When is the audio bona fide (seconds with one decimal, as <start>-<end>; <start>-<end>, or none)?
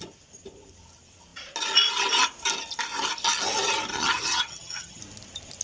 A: 0.0-3.9; 5.0-5.6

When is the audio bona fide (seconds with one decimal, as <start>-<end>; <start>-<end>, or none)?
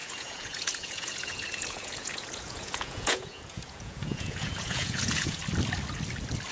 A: 5.4-6.5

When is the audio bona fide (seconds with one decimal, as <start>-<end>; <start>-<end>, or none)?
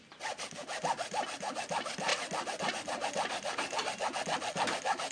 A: 0.0-5.1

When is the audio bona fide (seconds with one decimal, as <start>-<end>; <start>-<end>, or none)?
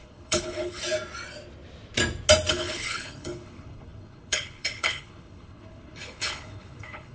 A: 0.8-2.5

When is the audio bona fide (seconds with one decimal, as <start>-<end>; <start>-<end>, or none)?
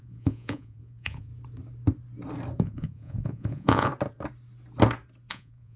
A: 1.3-2.6; 3.9-5.3